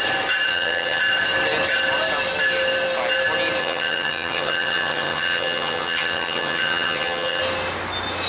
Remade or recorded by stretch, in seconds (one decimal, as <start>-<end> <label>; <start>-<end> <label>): 0.0-0.5 recorded; 0.5-1.0 remade; 1.0-3.6 recorded; 3.6-7.4 remade; 7.4-8.3 recorded